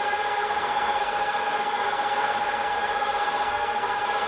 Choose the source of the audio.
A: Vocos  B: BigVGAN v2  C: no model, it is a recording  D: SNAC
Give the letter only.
D